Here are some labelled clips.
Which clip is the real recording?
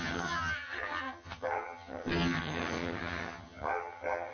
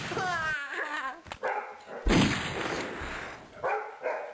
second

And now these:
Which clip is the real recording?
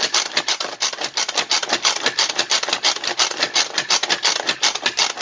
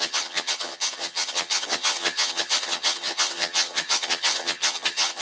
first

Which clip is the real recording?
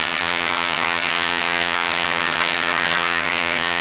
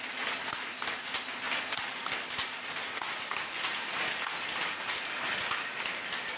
second